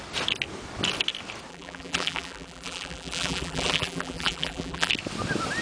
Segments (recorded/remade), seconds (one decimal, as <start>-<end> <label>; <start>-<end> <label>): 0.0-1.5 recorded; 1.5-4.9 remade; 4.9-5.6 recorded